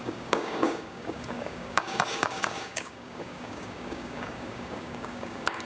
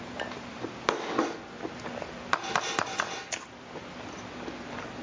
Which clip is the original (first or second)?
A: second